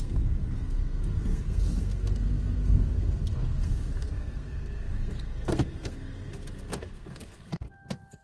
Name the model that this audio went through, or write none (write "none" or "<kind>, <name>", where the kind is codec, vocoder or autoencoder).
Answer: codec, SNAC